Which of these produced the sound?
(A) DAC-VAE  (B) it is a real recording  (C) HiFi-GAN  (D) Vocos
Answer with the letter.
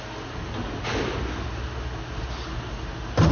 B